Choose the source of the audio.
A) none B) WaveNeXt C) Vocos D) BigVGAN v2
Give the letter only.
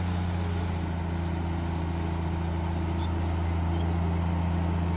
A